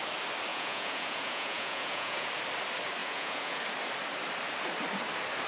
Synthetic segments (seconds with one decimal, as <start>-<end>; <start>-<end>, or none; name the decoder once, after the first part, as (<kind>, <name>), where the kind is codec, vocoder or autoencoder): 0.5-2.3 (vocoder, Vocos); 3.0-3.6